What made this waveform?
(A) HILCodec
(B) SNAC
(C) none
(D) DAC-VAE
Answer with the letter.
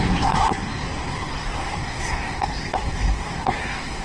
B